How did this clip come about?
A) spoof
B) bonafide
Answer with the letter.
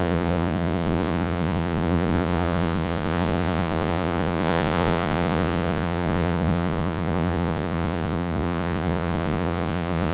A